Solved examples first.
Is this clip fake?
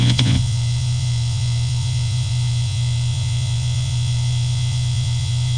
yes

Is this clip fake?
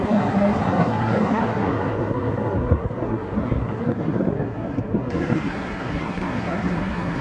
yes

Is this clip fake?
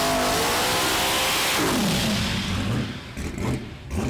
no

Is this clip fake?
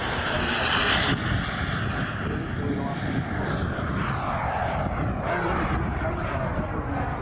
no